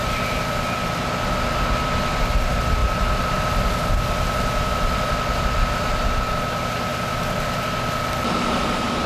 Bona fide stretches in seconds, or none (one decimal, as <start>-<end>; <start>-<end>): 0.0-9.1